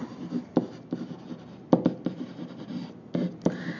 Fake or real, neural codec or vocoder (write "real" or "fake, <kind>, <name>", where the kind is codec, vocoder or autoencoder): real